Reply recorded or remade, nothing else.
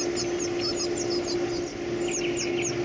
recorded